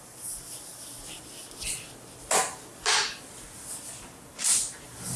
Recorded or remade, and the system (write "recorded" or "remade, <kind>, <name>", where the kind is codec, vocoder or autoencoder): recorded